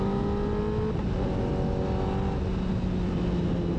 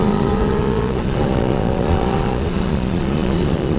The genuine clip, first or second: first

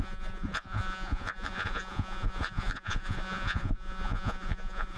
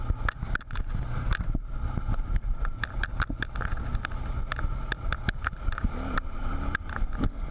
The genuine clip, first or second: second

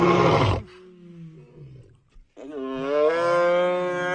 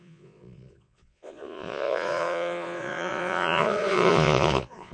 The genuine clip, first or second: first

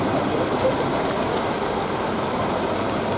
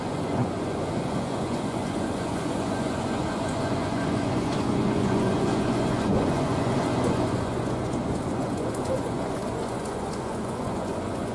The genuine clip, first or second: first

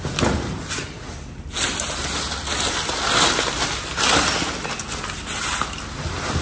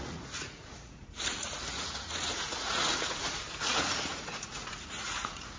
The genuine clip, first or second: first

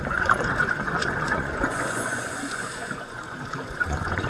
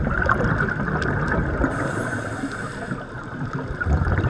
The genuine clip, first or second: second